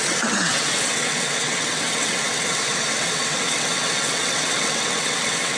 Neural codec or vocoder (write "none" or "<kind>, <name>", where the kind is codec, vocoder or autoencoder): vocoder, WaveNeXt